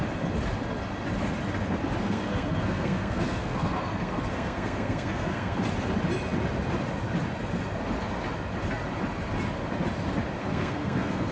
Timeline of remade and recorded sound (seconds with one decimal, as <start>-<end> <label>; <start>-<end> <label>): 0.0-2.0 recorded; 2.0-5.6 remade; 5.6-10.4 recorded; 10.4-11.3 remade